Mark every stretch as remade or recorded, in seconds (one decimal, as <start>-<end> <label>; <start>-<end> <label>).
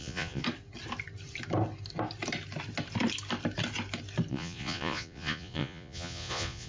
0.0-0.4 remade; 0.4-4.3 recorded; 4.3-6.7 remade